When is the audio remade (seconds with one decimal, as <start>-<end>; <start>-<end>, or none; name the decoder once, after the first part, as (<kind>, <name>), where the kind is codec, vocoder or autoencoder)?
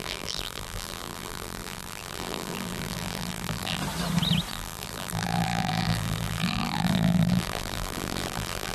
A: 0.0-3.8 (vocoder, BigVGAN v2); 4.5-8.7